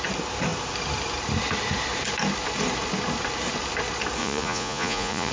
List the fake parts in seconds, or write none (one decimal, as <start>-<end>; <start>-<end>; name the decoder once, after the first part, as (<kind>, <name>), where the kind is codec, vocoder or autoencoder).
4.2-5.3 (vocoder, Vocos)